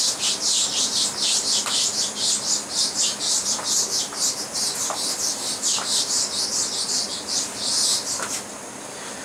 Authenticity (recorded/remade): recorded